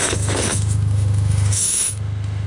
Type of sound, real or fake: fake